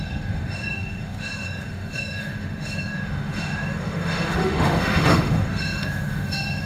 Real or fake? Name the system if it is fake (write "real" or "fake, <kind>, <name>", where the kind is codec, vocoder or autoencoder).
fake, autoencoder, DAC-VAE